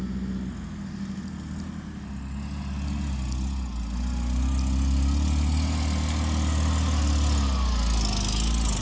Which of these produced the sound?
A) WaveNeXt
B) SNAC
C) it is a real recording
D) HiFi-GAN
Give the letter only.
C